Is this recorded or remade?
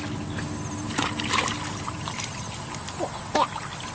recorded